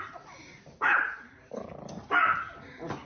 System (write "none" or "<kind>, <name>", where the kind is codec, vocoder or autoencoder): none